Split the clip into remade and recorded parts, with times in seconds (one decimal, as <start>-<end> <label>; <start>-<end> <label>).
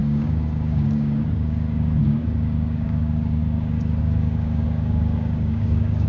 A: 0.0-6.1 remade